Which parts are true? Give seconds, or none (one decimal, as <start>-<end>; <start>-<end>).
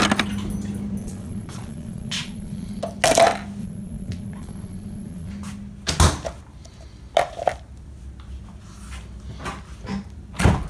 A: 0.0-1.0; 2.8-3.6; 5.3-10.7